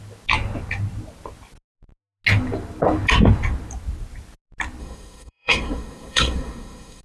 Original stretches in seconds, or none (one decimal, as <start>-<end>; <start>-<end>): 0.0-4.8